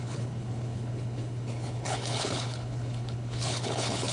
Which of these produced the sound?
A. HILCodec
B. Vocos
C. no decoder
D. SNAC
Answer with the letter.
A